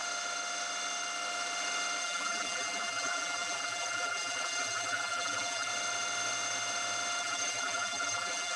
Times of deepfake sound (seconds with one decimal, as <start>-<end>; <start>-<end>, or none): 2.0-5.7; 7.2-8.6